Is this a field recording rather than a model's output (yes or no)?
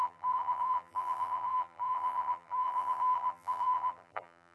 no